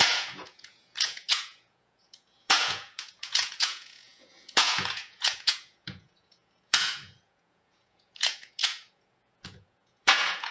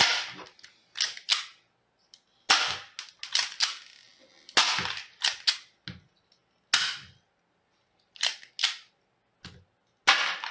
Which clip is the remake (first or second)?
first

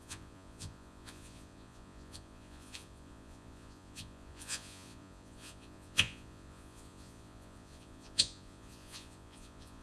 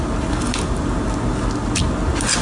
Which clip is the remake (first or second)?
first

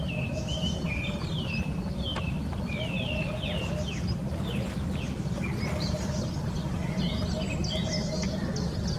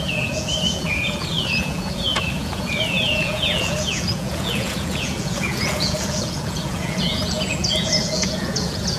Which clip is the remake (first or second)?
second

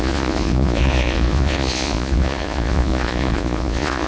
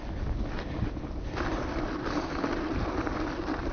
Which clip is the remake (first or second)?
first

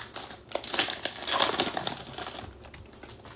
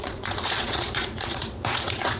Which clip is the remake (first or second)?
second